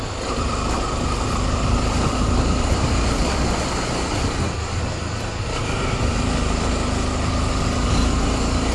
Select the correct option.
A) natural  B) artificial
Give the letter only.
A